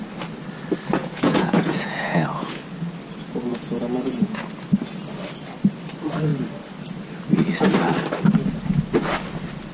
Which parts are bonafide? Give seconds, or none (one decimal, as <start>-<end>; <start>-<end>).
0.0-1.0; 2.6-3.5; 4.4-9.7